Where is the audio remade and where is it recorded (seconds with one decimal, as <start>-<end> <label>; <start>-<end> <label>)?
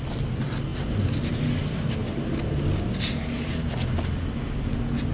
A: 0.0-5.1 recorded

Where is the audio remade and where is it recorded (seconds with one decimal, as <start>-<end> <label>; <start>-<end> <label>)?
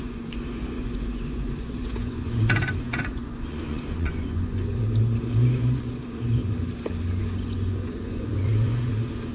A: 0.0-6.4 remade; 6.4-7.2 recorded; 7.2-9.3 remade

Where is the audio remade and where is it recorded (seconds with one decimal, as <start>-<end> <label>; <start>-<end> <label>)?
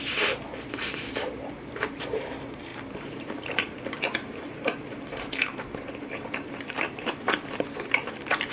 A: 0.0-8.5 remade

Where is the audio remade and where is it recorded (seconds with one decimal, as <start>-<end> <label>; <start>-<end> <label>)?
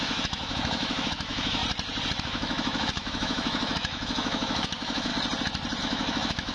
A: 0.0-1.6 remade; 1.6-2.2 recorded; 2.2-5.1 remade; 5.1-5.8 recorded; 5.8-6.5 remade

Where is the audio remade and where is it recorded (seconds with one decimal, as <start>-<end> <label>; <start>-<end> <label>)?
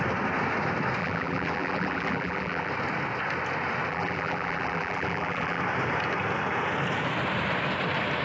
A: 0.0-1.0 recorded; 1.0-2.7 remade; 2.7-3.9 recorded; 3.9-5.6 remade; 5.6-8.2 recorded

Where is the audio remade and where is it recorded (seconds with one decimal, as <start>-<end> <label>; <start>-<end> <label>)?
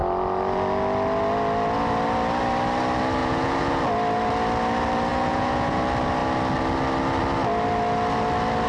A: 0.0-3.2 recorded; 3.2-3.8 remade; 3.8-5.1 recorded; 5.1-5.8 remade; 5.8-8.7 recorded